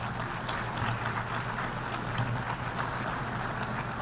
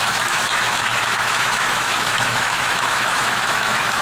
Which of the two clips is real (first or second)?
first